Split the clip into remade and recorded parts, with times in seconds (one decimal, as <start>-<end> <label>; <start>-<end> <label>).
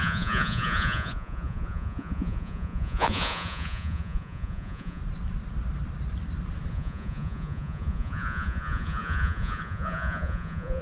0.0-5.0 remade; 5.0-6.7 recorded; 6.7-10.8 remade